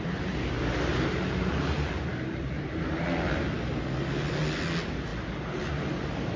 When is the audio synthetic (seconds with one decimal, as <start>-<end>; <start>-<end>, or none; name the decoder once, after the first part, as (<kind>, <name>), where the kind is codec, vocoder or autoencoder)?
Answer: 0.9-2.9 (vocoder, BigVGAN v2); 5.1-5.7